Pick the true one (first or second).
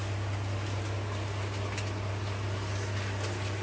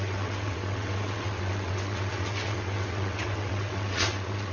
first